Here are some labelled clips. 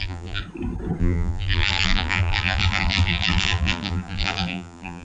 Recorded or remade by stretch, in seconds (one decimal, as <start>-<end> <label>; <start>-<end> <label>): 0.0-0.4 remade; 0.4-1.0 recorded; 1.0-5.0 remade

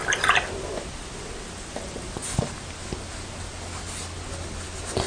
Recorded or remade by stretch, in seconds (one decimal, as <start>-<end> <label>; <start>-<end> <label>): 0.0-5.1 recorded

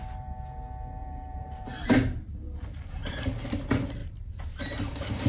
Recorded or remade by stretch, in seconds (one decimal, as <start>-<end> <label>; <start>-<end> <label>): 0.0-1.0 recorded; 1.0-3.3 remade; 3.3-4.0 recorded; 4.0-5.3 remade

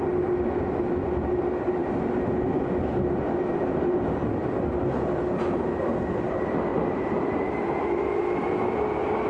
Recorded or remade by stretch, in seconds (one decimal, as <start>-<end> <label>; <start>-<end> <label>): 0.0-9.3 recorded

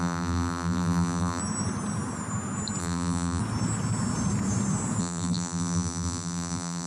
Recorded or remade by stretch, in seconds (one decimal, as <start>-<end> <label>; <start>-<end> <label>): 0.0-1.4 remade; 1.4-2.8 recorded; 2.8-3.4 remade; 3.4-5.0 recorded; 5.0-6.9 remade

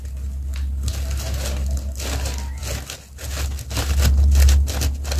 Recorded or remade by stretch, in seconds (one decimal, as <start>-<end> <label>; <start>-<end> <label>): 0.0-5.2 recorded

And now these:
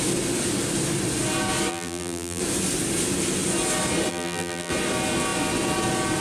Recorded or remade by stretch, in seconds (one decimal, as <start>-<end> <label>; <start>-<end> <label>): 0.0-1.7 recorded; 1.7-2.4 remade; 2.4-4.1 recorded; 4.1-4.7 remade; 4.7-6.2 recorded